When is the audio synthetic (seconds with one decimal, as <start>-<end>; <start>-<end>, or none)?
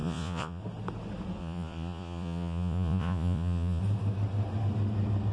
0.0-0.6; 1.4-3.8